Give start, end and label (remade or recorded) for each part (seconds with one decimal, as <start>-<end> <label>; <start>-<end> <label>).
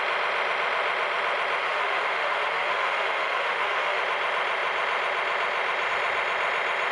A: 0.0-1.6 recorded; 1.6-4.0 remade; 4.0-6.9 recorded